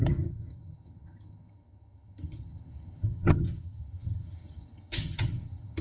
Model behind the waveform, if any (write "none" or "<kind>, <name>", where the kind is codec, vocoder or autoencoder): vocoder, HiFi-GAN